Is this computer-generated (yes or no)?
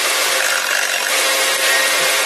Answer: no